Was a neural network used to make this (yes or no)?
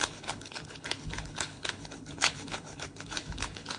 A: yes